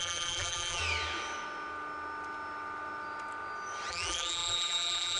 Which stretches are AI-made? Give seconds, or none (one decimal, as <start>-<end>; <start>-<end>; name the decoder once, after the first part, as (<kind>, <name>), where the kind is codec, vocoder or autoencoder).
0.0-0.8 (vocoder, BigVGAN v2); 3.9-5.2